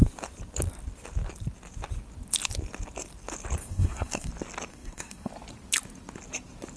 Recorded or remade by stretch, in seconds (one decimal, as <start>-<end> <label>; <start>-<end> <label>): 0.0-3.6 recorded; 3.6-4.3 remade; 4.3-4.7 recorded; 4.7-5.3 remade; 5.3-6.8 recorded